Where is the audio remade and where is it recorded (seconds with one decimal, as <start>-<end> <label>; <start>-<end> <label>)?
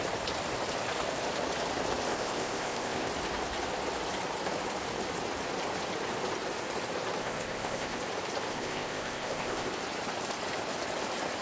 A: 0.0-2.1 recorded; 2.1-3.1 remade; 3.1-7.2 recorded; 7.2-8.0 remade; 8.0-8.5 recorded; 8.5-9.7 remade; 9.7-11.4 recorded